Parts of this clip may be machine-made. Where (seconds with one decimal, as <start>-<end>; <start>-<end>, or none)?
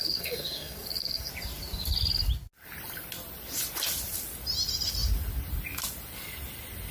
0.0-1.3